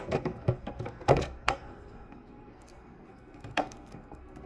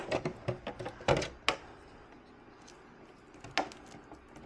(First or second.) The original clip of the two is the second